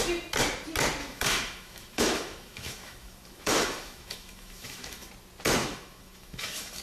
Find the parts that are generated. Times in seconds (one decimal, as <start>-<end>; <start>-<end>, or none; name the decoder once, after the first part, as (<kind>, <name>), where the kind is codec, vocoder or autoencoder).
1.0-5.1 (autoencoder, DAC-VAE); 5.6-6.8

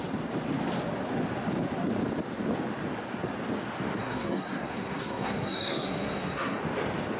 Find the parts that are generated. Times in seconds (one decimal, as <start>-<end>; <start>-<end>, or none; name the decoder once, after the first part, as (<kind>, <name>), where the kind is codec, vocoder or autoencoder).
4.0-6.6 (codec, SNAC)

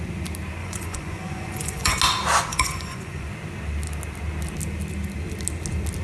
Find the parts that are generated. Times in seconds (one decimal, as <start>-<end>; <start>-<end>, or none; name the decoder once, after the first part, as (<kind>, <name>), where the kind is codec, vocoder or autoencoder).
0.6-2.0 (vocoder, Vocos); 2.5-3.3

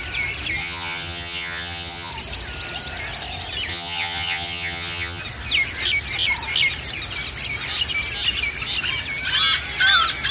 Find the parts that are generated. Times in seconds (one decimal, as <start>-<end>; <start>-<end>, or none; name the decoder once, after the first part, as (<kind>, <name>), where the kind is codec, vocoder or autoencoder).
0.6-2.1 (vocoder, HiFi-GAN); 3.7-5.2

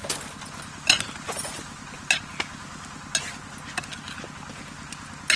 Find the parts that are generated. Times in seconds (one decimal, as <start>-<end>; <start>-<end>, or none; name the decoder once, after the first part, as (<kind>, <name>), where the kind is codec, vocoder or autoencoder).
none

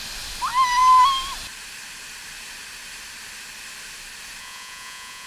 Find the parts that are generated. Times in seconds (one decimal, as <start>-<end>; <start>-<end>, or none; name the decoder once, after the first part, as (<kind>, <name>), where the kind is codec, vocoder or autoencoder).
4.4-5.3 (vocoder, Vocos)